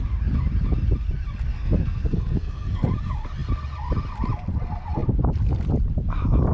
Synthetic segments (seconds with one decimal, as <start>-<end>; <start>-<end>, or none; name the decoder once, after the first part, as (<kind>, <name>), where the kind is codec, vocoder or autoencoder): 1.5-2.9 (codec, SNAC)

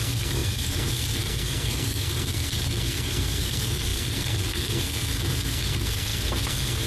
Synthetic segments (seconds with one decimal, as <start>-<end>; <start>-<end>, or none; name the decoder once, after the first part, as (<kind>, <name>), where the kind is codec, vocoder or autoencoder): 0.0-6.9 (codec, SNAC)

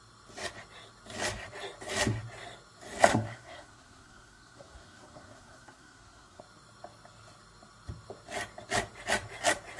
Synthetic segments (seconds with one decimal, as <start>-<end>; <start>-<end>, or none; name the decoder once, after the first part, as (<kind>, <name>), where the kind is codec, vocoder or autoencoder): 3.1-6.4 (codec, SNAC)

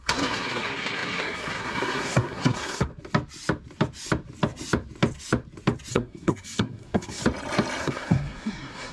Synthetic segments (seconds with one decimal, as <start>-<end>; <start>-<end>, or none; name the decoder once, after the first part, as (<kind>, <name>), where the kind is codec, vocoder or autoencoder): 0.0-2.9 (codec, SNAC); 5.9-7.2; 7.8-8.9

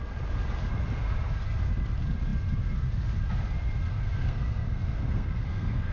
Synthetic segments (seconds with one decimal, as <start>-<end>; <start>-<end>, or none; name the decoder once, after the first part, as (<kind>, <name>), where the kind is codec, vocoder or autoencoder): 3.9-5.9 (codec, SNAC)